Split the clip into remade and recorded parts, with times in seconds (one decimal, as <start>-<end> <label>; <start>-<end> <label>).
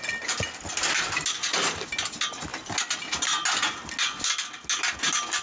0.0-5.4 recorded